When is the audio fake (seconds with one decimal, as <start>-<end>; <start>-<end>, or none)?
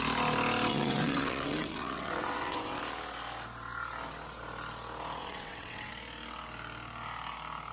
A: 0.7-2.8; 5.2-5.9